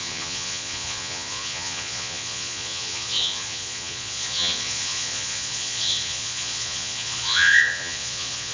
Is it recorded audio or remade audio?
remade